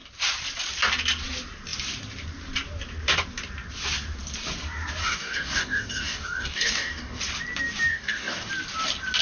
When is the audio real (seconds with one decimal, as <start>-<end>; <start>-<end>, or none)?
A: 0.0-5.0; 7.2-7.9; 8.5-9.2